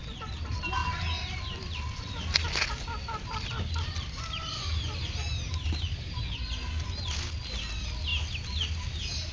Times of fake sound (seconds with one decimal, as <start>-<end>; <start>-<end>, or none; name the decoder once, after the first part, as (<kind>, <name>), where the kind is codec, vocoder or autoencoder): none

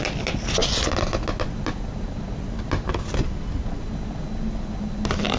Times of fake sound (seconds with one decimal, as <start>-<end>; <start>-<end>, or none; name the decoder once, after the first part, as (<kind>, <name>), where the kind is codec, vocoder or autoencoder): none

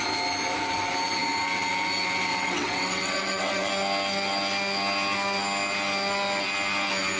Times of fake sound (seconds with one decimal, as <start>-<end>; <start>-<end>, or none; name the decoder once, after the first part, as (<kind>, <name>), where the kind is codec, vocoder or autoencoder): 2.3-3.7 (vocoder, WaveNeXt)